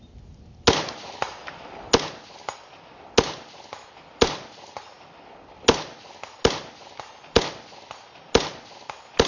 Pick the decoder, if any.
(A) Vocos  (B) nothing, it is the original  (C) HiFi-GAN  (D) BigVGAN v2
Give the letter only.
B